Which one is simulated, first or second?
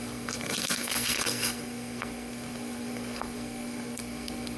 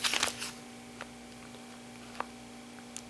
first